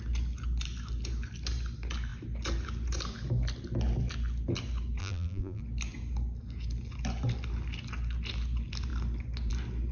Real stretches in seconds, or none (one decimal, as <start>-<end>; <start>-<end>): 0.0-5.0; 5.6-9.9